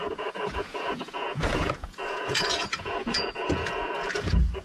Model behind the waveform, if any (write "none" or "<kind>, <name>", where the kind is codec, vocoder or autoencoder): vocoder, Vocos